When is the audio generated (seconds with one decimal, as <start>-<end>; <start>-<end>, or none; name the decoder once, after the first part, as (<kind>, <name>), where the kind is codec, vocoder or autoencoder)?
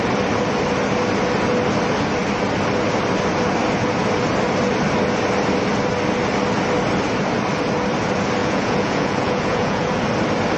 8.4-10.0 (vocoder, Vocos)